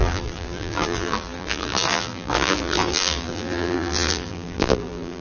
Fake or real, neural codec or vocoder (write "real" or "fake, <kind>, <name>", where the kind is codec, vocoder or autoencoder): fake, vocoder, BigVGAN v2